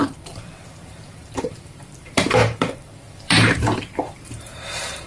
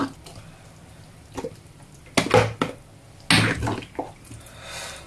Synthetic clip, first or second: first